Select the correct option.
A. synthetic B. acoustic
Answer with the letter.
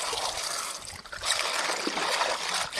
B